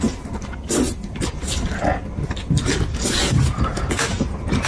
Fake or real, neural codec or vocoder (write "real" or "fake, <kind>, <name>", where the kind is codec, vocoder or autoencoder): real